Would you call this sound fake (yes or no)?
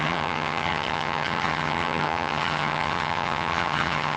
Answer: yes